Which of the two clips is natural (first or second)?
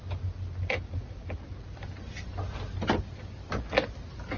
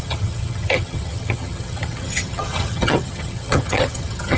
first